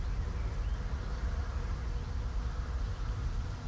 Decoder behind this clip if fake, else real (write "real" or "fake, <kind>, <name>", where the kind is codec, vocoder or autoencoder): real